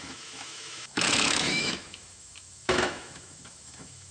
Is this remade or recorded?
remade